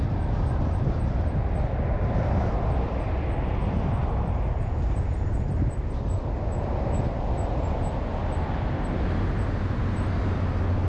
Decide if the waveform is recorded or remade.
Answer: recorded